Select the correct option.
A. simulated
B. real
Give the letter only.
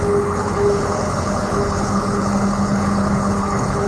A